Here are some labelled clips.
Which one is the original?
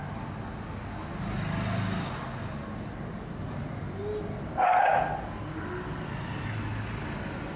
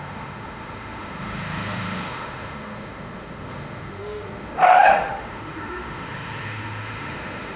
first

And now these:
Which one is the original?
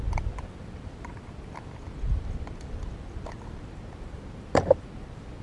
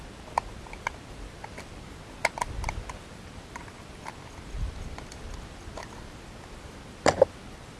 second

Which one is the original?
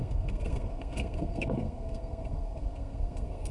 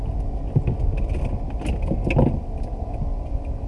second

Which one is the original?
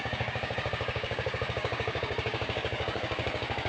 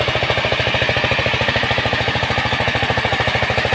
second